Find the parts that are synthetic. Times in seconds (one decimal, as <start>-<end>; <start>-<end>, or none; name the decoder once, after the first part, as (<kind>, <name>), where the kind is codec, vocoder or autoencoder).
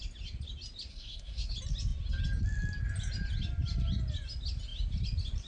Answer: 0.9-1.5 (codec, SNAC)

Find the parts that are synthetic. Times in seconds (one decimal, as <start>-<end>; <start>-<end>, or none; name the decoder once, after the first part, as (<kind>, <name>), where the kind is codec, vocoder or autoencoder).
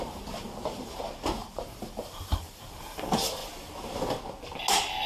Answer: 1.4-2.7 (vocoder, BigVGAN v2)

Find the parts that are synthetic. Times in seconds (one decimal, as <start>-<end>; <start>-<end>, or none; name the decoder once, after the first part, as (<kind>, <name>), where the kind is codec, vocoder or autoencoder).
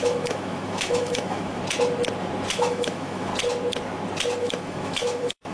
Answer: 0.0-1.6 (autoencoder, DAC-VAE); 2.5-3.3; 4.4-5.5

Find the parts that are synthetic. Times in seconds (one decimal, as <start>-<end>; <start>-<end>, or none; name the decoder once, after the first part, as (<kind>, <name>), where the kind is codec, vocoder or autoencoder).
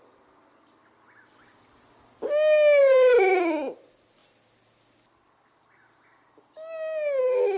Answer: 2.8-3.4 (vocoder, Vocos)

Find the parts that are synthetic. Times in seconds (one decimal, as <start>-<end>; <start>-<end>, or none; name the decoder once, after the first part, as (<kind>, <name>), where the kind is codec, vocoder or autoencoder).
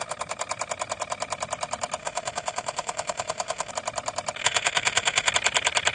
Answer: 2.0-3.7 (autoencoder, DAC-VAE); 4.4-5.3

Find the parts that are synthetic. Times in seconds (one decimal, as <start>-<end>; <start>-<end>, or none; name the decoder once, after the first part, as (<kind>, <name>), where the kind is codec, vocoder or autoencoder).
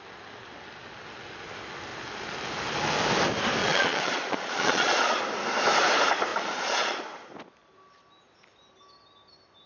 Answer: 3.6-5.2 (vocoder, Vocos); 6.3-7.0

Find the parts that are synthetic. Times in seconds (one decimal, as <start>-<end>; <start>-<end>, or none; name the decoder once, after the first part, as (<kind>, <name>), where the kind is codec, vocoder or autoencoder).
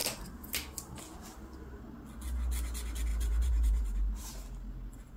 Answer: 3.1-4.3 (vocoder, BigVGAN v2)